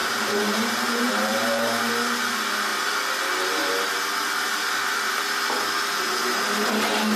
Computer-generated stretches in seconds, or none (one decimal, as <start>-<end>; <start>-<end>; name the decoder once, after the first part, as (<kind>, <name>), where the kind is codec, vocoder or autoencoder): 0.0-1.9 (vocoder, BigVGAN v2)